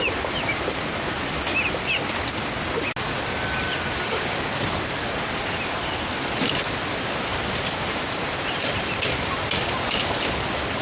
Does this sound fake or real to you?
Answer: real